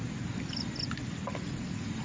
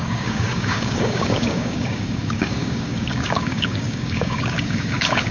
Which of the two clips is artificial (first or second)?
second